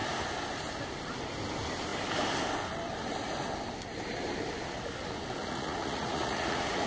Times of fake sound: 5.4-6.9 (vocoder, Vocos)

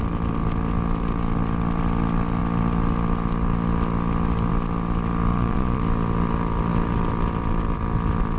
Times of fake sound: 5.3-5.8 (vocoder, Vocos)